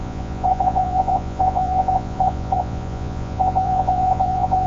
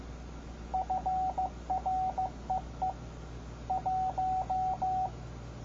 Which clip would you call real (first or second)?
second